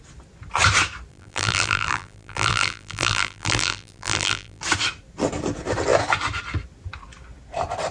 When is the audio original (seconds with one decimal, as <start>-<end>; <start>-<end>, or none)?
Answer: 0.0-1.1; 4.6-7.9